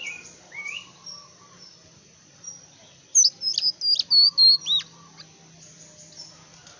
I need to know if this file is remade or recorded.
recorded